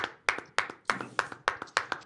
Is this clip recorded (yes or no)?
yes